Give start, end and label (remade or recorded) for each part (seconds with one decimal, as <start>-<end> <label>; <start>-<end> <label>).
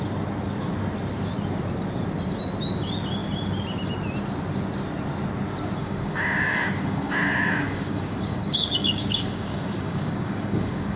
0.0-5.8 recorded; 5.8-11.0 remade